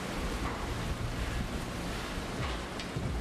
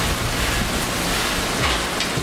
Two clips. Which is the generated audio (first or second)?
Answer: first